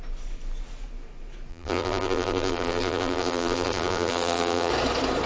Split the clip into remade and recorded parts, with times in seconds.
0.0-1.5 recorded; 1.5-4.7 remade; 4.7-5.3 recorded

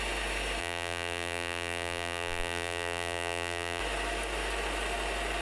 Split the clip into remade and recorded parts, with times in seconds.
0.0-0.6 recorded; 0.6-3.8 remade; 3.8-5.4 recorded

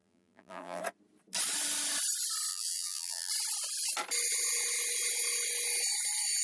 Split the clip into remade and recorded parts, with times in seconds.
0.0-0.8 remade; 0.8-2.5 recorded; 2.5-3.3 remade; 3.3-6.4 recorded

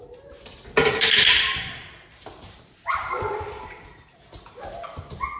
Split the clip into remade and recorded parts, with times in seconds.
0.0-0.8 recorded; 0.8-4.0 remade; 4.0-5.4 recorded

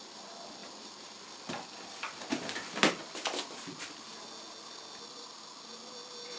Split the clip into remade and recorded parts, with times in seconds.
0.0-6.4 recorded

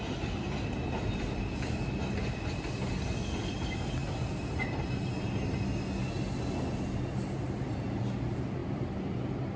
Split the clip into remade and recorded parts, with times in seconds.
0.0-8.6 recorded; 8.6-9.2 remade; 9.2-9.6 recorded

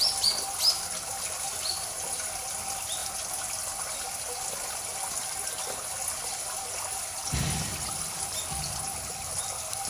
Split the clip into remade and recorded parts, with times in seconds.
0.0-9.9 recorded